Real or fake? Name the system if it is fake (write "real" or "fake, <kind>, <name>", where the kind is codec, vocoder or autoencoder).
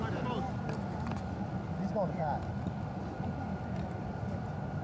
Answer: real